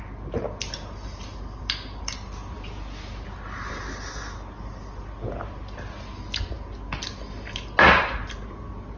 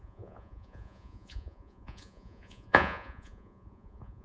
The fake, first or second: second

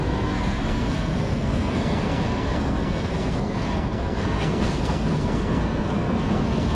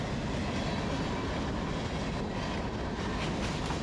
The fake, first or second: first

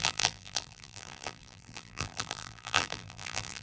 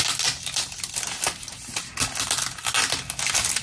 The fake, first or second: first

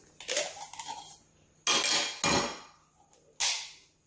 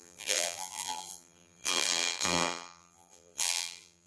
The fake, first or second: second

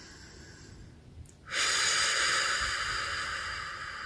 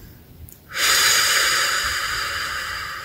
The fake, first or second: second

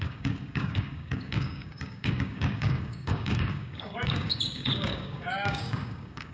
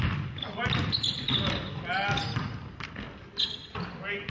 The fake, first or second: first